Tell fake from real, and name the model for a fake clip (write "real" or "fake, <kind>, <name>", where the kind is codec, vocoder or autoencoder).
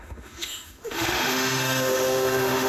fake, autoencoder, DAC-VAE